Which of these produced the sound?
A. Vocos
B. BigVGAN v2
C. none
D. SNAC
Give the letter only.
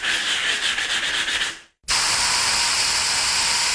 C